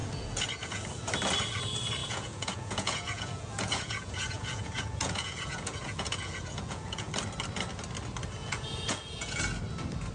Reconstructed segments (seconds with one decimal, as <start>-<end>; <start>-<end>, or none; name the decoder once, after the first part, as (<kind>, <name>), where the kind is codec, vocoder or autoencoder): 0.0-0.8 (vocoder, Vocos); 2.0-7.1; 8.4-9.4